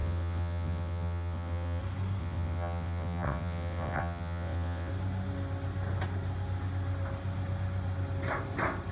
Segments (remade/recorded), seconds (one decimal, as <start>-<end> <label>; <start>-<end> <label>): 0.0-1.8 remade; 1.8-2.2 recorded; 2.2-4.9 remade; 4.9-8.9 recorded